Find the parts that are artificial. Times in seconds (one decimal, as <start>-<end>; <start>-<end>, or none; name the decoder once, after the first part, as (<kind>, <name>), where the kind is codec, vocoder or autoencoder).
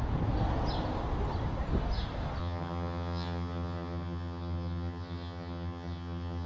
2.4-6.5 (vocoder, HiFi-GAN)